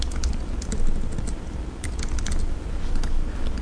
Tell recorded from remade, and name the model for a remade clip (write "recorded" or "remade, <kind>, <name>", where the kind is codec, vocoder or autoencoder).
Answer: recorded